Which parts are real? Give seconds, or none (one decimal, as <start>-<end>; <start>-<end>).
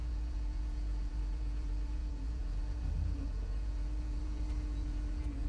none